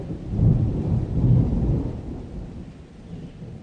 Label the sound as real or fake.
real